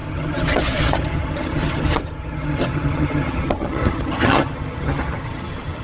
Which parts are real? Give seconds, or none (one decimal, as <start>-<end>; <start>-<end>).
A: none